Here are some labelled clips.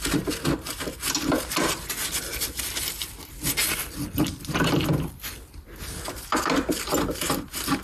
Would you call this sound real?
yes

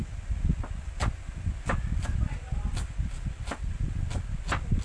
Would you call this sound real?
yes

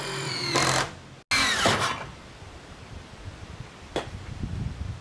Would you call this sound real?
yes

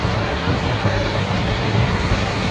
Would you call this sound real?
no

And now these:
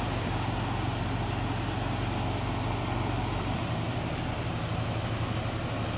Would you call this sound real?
yes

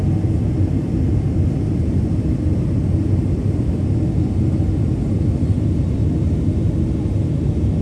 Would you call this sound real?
no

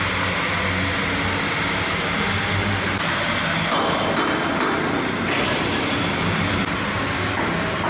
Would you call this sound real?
yes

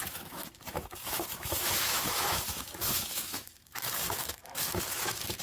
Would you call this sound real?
no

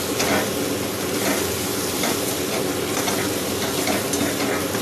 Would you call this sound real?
yes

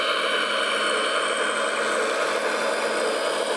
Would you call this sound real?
yes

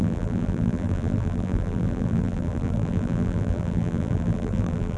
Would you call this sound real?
no